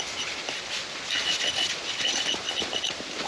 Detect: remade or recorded recorded